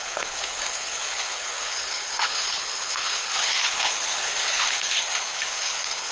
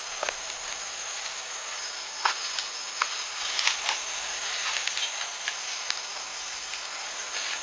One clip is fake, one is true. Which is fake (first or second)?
first